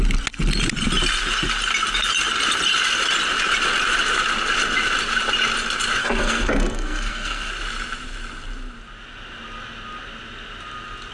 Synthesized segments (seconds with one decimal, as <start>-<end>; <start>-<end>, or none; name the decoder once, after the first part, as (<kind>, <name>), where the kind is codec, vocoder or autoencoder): 6.0-7.5 (codec, SNAC)